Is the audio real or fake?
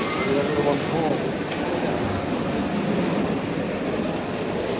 real